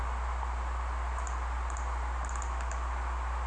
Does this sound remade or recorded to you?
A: recorded